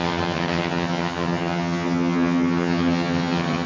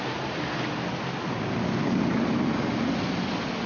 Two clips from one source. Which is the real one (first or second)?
second